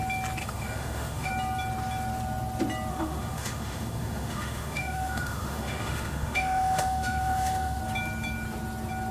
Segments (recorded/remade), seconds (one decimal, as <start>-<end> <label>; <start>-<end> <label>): 0.0-0.4 recorded; 0.4-1.3 remade; 1.3-2.9 recorded; 2.9-7.8 remade; 7.8-9.1 recorded